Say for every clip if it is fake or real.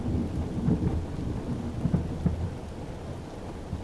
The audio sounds real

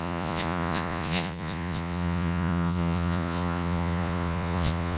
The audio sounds fake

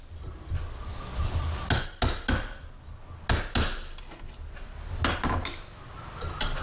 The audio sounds real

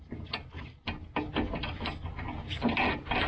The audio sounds real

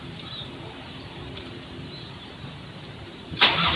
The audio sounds fake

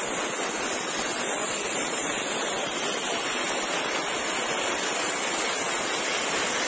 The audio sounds real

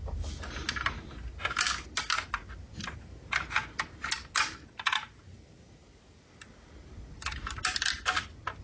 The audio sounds real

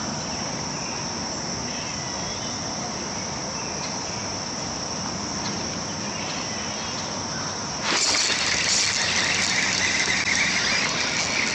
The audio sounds real